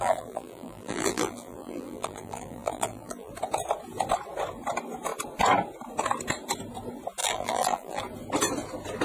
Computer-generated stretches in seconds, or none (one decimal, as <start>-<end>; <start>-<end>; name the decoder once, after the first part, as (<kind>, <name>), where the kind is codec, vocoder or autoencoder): 0.0-3.3 (vocoder, BigVGAN v2); 7.2-8.0